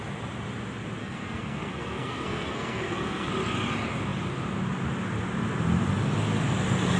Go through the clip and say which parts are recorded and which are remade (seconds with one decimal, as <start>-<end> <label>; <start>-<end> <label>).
0.0-1.0 recorded; 1.0-3.3 remade; 3.3-7.0 recorded